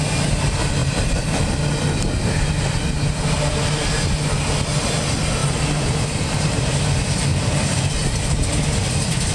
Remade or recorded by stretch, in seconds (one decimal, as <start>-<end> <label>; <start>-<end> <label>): 0.0-0.8 recorded; 0.8-1.4 remade; 1.4-5.4 recorded; 5.4-6.8 remade; 6.8-7.3 recorded; 7.3-8.1 remade; 8.1-9.3 recorded